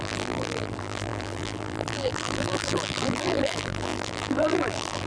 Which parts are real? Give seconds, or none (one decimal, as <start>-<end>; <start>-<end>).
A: none